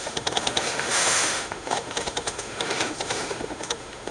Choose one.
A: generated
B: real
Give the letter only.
A